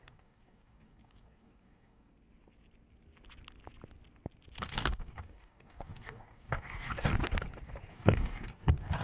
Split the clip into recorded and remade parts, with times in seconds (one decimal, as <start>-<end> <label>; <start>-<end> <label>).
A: 0.0-2.1 remade; 2.1-4.6 recorded; 4.6-7.1 remade; 7.1-7.9 recorded; 7.9-9.0 remade